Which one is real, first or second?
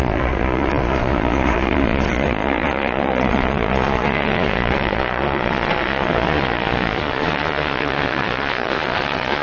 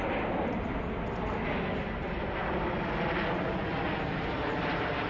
second